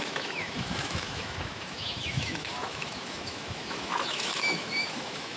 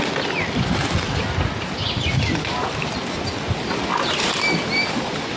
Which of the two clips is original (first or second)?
second